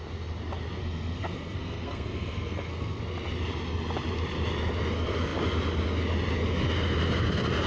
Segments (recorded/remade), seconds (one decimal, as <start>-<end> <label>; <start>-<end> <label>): 0.0-0.8 recorded; 0.8-3.0 remade; 3.0-7.7 recorded